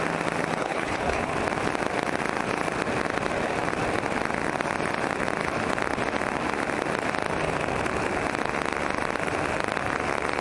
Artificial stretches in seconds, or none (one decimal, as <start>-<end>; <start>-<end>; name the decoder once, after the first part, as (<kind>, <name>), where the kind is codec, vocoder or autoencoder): 0.6-1.3 (codec, HILCodec)